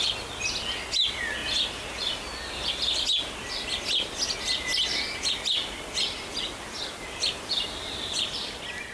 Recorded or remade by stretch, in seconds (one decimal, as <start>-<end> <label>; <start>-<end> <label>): 0.0-8.9 recorded